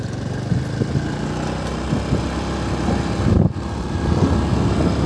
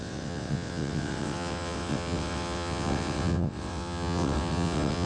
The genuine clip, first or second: first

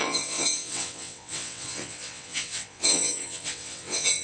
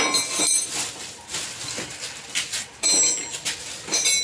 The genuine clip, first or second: second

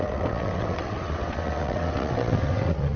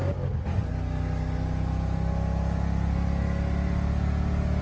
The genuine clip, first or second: second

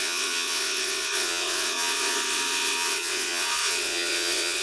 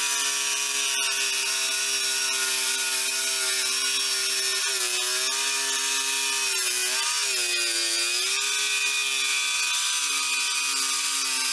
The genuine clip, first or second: second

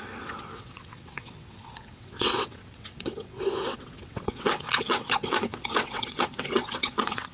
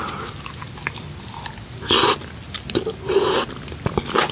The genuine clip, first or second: second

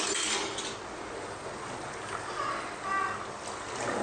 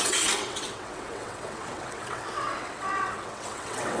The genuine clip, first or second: first